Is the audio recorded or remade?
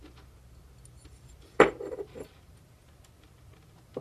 recorded